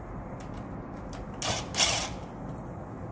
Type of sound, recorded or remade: recorded